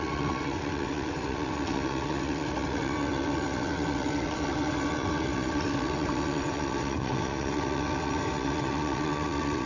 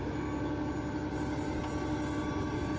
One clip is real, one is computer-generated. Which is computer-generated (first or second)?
first